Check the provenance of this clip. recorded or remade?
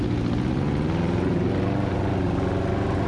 recorded